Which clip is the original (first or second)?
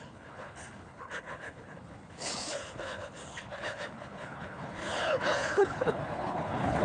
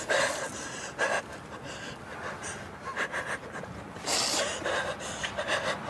second